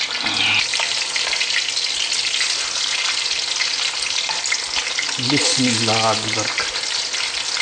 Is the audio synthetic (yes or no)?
no